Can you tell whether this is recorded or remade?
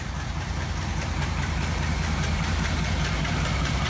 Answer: remade